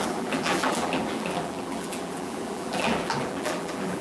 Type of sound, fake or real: fake